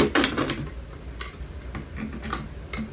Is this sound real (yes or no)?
yes